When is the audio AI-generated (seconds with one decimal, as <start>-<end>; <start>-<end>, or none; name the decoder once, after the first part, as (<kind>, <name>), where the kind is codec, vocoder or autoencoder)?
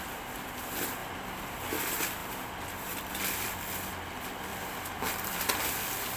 2.2-3.5 (vocoder, BigVGAN v2); 4.5-5.4